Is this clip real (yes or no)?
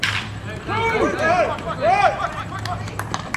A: yes